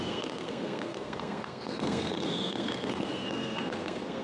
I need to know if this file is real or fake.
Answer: fake